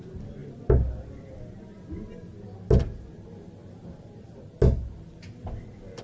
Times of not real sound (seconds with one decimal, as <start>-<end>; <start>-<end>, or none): none